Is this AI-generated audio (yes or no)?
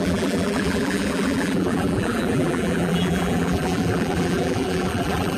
yes